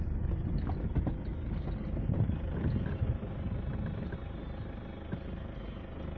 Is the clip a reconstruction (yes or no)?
no